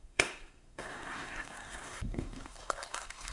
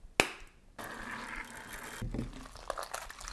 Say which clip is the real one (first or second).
second